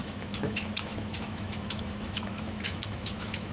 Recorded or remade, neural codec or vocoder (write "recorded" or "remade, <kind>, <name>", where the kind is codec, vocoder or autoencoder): remade, autoencoder, DAC-VAE